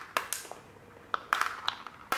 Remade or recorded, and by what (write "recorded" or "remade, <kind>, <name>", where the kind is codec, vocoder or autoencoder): recorded